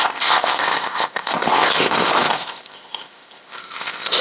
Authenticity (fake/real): fake